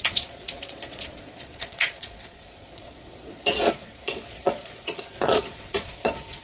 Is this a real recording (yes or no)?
no